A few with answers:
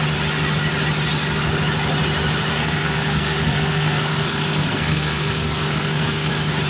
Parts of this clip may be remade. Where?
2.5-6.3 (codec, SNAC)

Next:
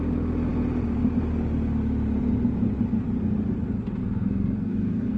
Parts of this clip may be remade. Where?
4.0-5.2 (codec, SNAC)

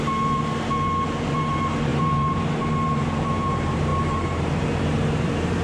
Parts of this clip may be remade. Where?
0.0-5.6 (vocoder, BigVGAN v2)

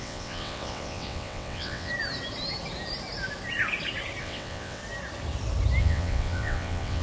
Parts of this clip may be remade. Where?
0.0-1.9 (vocoder, WaveNeXt); 4.2-4.8; 5.8-7.0

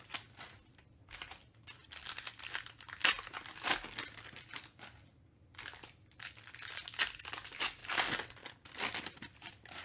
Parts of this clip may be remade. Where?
none

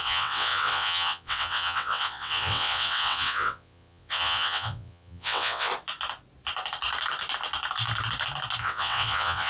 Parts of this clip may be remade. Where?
0.0-5.7 (vocoder, WaveNeXt); 8.6-9.5

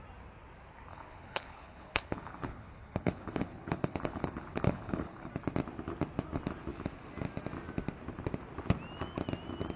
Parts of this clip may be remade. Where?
0.9-5.3 (codec, HILCodec)

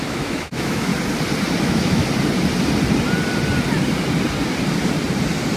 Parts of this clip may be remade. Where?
0.0-0.9 (autoencoder, DAC-VAE); 1.6-2.0